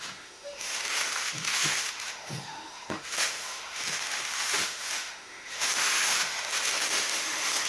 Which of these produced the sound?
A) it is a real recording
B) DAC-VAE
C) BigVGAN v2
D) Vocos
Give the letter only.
B